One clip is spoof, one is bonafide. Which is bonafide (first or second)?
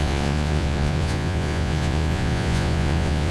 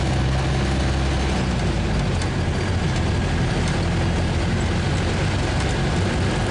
second